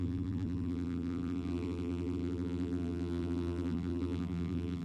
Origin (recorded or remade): remade